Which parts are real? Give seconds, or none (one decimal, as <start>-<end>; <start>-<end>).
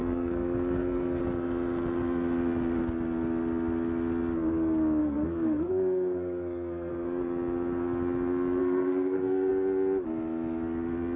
1.2-5.0; 6.9-8.6; 9.5-11.2